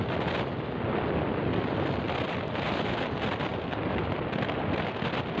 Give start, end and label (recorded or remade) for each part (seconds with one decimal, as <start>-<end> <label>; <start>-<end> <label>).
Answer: 0.0-5.4 recorded